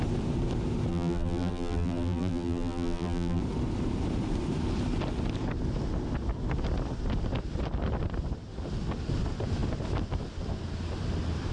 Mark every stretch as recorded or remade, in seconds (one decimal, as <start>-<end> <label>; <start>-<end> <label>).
0.0-0.9 recorded; 0.9-3.4 remade; 3.4-11.5 recorded